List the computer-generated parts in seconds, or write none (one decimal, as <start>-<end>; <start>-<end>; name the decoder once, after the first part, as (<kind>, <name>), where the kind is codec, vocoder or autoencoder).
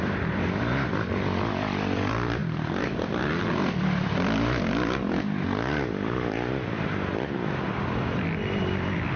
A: 0.0-9.2 (vocoder, BigVGAN v2)